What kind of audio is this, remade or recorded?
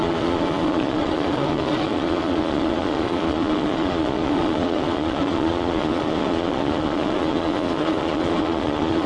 remade